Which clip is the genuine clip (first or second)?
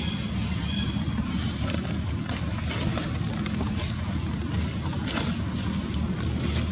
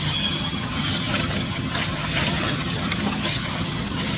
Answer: first